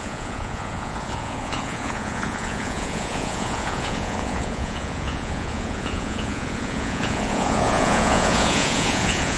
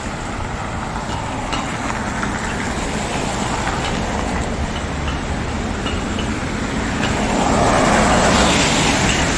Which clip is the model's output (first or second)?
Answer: first